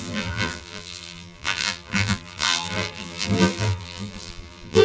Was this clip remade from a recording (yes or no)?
yes